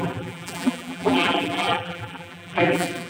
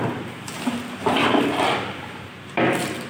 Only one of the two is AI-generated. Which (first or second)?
first